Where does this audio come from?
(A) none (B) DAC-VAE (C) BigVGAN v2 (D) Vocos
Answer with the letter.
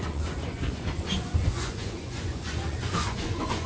D